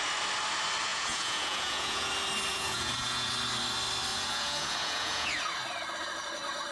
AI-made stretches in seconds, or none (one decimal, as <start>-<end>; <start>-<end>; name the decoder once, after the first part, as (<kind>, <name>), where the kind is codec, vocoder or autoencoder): 0.9-2.1 (vocoder, Vocos); 2.5-3.3; 4.1-5.4